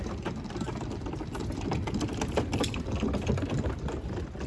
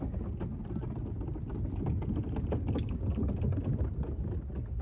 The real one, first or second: second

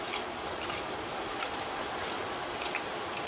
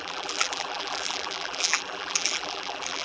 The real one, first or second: first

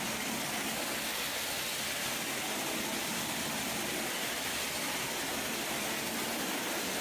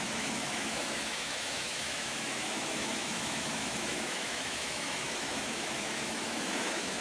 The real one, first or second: first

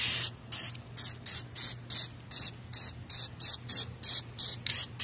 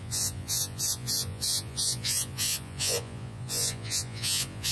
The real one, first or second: first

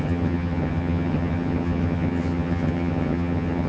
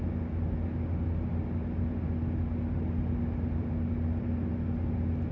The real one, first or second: second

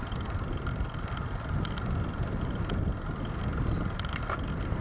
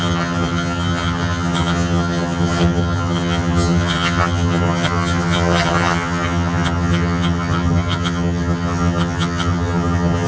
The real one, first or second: first